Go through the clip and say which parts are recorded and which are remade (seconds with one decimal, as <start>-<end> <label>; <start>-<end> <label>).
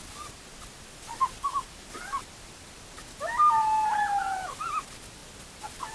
0.0-5.9 recorded